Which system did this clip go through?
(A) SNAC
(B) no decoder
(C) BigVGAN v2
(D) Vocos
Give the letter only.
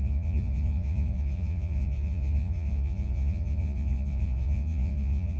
D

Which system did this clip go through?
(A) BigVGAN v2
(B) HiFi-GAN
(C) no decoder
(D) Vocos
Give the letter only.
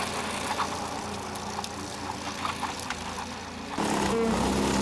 C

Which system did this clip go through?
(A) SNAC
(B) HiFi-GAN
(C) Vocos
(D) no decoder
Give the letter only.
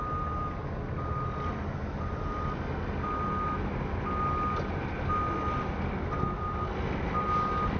D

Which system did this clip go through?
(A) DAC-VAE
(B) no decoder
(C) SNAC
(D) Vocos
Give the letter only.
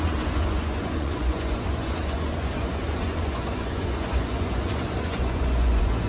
D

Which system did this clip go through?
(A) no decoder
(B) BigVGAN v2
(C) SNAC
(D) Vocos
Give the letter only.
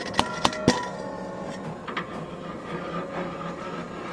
A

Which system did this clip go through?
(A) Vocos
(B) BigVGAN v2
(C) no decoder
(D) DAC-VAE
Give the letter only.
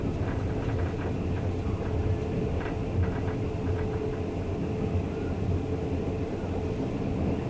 C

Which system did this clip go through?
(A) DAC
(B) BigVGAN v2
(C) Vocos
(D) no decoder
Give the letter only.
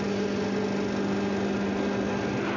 D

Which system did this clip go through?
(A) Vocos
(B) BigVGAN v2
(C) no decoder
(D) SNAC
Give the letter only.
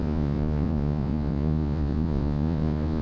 A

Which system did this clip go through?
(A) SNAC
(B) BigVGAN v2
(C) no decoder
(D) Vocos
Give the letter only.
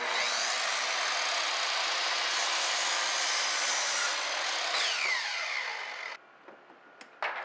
C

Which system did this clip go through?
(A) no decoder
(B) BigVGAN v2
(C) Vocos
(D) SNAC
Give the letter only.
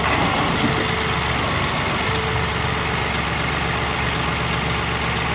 A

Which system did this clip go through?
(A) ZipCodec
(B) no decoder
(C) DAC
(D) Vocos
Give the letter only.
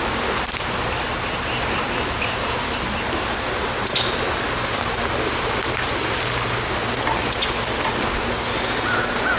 B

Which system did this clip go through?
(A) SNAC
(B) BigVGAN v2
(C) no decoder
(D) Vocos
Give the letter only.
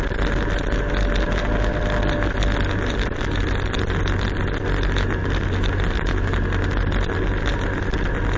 C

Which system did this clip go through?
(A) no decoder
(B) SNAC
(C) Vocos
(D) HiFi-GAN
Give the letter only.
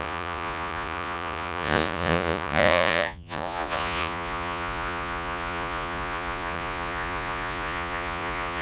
C